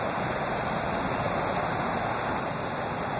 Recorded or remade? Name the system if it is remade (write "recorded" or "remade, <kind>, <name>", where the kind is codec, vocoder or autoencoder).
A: recorded